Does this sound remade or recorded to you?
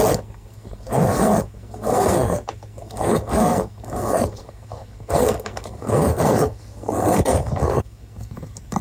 remade